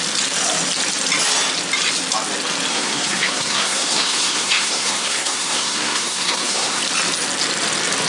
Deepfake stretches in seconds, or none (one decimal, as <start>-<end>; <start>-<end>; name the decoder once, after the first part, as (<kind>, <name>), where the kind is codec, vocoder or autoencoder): 2.7-6.8 (codec, SNAC)